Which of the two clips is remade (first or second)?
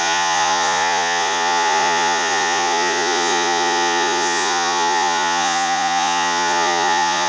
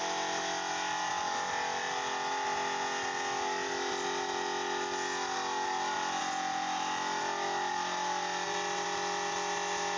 first